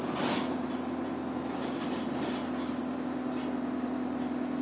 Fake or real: real